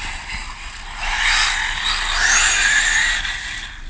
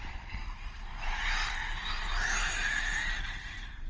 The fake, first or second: second